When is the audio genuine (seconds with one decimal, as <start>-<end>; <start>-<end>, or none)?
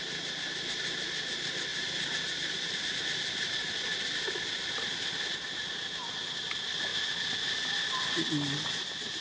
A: 0.0-9.2